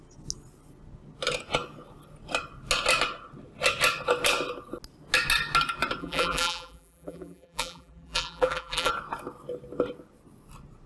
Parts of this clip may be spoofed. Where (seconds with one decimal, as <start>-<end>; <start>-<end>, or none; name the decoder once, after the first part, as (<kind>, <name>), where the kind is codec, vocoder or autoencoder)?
6.0-8.9 (vocoder, BigVGAN v2)